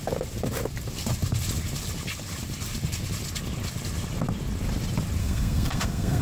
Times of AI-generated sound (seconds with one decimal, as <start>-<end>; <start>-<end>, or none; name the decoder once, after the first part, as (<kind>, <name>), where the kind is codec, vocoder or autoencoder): 5.2-6.2 (codec, SNAC)